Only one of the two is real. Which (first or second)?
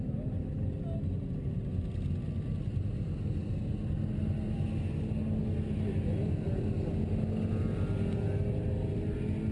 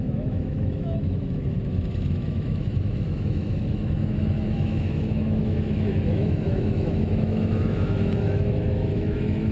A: first